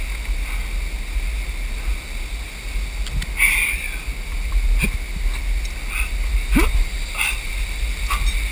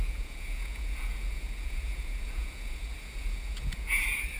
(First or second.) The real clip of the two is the first